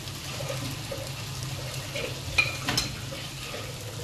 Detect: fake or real real